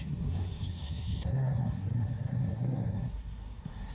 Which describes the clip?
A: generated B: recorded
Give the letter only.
A